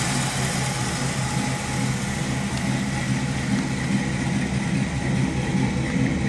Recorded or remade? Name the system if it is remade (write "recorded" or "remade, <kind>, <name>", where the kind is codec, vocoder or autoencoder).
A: recorded